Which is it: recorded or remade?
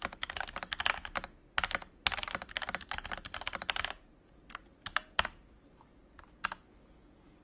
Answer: recorded